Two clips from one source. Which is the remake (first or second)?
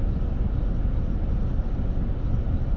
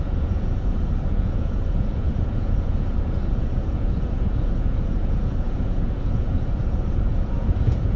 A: second